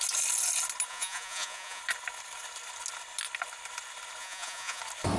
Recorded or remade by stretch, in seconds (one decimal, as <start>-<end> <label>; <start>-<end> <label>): 0.0-0.9 recorded; 0.9-1.8 remade; 1.8-4.2 recorded; 4.2-4.8 remade; 4.8-5.2 recorded